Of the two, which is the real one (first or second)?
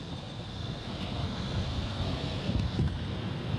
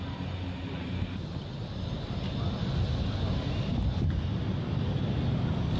second